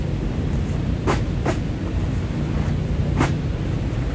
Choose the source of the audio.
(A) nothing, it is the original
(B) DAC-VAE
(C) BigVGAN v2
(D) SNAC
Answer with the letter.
C